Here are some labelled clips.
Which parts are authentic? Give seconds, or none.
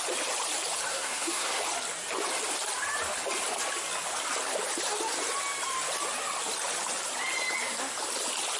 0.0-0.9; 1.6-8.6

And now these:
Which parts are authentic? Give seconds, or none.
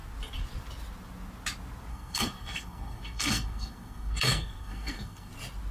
0.0-1.9; 5.3-5.7